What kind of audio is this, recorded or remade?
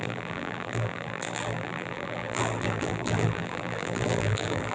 remade